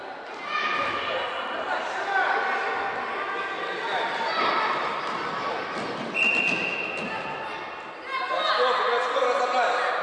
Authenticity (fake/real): real